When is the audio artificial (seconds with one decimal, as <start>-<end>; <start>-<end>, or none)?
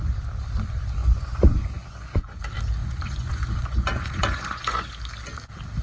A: 1.0-2.4; 2.8-4.9